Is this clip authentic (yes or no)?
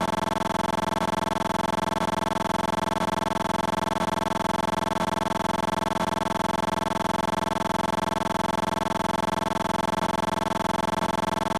yes